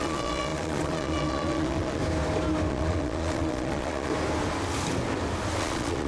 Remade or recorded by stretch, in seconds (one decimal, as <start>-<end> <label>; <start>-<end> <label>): 0.0-2.0 remade; 2.0-2.7 recorded; 2.7-4.1 remade; 4.1-5.6 recorded; 5.6-6.1 remade